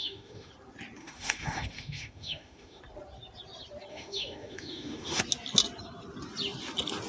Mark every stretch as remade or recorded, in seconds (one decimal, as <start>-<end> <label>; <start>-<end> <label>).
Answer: 0.0-0.5 remade; 0.5-1.0 recorded; 1.0-2.8 remade; 2.8-3.9 recorded; 3.9-5.2 remade; 5.2-7.1 recorded